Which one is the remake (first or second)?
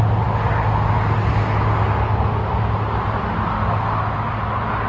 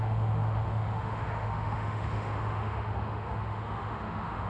second